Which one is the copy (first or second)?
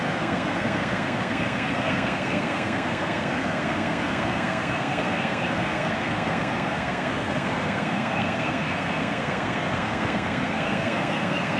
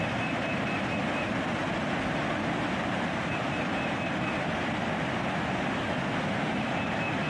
first